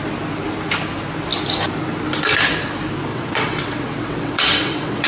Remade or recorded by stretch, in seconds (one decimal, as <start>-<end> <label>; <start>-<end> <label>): 0.0-3.1 recorded; 3.1-5.1 remade